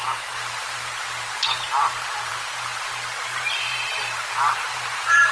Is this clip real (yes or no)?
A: no